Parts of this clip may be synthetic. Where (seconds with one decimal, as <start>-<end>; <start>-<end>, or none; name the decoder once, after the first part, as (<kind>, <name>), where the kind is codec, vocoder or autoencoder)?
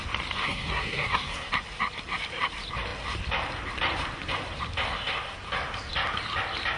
0.4-1.5 (codec, SNAC)